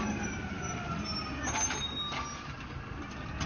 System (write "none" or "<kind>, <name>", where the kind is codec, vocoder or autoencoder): none